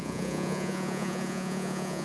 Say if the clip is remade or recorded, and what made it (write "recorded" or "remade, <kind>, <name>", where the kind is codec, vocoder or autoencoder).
remade, vocoder, Vocos